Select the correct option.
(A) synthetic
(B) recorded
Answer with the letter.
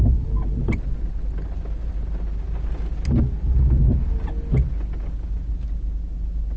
B